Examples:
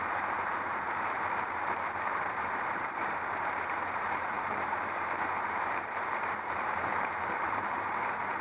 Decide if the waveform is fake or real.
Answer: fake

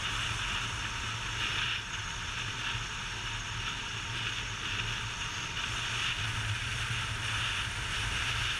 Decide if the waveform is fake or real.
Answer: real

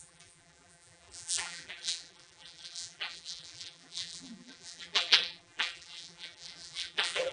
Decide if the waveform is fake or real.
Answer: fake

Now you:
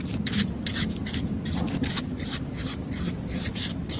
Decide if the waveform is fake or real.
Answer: real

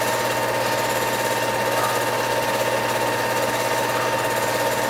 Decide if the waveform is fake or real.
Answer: real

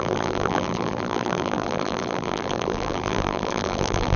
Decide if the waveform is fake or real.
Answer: fake